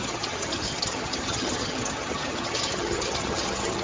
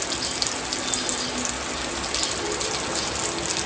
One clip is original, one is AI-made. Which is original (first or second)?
second